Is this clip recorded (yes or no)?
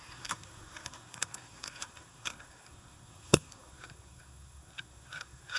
no